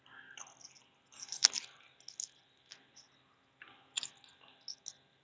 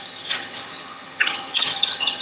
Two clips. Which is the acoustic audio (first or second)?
first